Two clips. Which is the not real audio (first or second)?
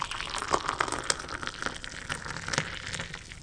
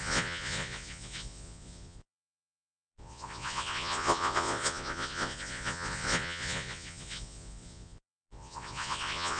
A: second